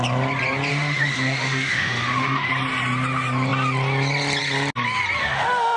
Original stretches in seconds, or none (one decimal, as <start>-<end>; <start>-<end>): 0.0-0.7; 2.5-5.2